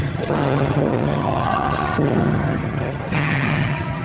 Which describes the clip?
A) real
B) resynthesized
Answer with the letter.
B